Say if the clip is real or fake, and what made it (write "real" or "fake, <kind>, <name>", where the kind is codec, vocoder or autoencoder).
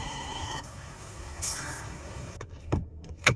fake, codec, SNAC